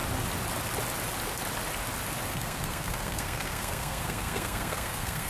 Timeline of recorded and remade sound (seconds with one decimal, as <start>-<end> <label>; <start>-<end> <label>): 0.0-2.3 recorded; 2.3-5.3 remade